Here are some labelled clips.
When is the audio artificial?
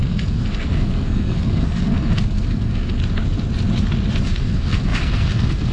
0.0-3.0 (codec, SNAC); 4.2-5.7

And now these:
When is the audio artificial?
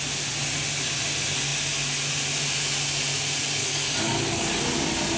3.6-4.6 (codec, DAC)